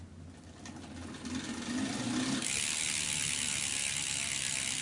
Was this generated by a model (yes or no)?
no